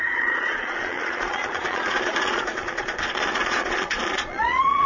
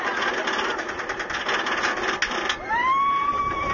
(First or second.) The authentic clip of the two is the second